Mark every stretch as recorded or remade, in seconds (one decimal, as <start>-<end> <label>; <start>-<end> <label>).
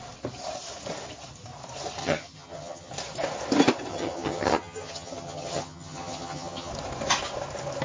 0.0-2.0 recorded; 2.0-2.9 remade; 2.9-3.9 recorded; 3.9-6.7 remade; 6.7-7.8 recorded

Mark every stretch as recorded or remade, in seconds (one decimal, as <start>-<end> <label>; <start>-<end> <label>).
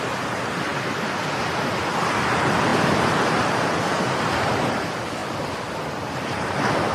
0.0-6.9 recorded